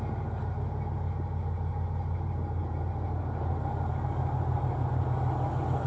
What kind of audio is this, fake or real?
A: real